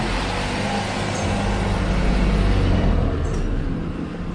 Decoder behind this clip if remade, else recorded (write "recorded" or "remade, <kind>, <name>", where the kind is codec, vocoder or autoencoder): recorded